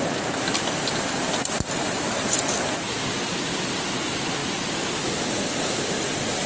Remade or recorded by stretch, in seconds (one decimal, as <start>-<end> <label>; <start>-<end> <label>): 0.0-6.5 recorded

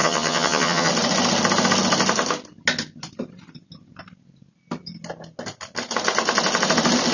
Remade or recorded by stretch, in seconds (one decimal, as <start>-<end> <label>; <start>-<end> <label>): 0.0-0.9 remade; 0.9-7.1 recorded

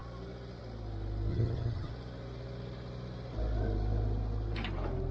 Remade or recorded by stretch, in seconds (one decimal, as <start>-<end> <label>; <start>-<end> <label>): 0.0-1.3 recorded; 1.3-1.9 remade; 1.9-5.1 recorded

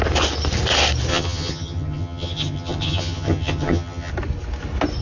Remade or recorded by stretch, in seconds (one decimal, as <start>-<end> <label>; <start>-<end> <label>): 0.0-1.1 recorded; 1.1-4.1 remade; 4.1-5.0 recorded

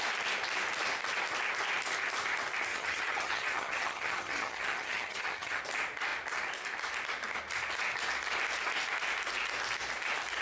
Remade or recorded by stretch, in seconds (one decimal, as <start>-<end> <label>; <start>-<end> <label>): 0.0-2.7 recorded; 2.7-5.6 remade; 5.6-10.4 recorded